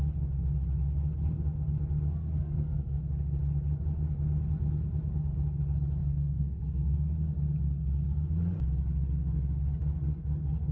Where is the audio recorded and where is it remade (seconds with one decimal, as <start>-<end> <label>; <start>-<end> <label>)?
0.0-2.4 recorded; 2.4-3.0 remade; 3.0-6.0 recorded; 6.0-7.1 remade; 7.1-10.7 recorded